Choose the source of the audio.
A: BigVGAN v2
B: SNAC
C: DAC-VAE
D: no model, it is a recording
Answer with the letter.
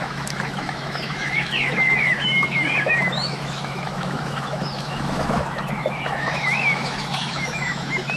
C